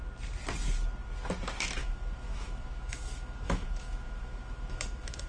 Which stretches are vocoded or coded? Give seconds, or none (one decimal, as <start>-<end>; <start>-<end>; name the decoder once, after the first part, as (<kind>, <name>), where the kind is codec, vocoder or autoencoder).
1.8-5.3 (autoencoder, DAC-VAE)